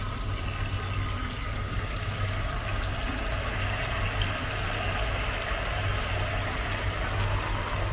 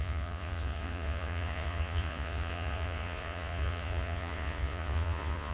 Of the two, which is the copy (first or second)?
second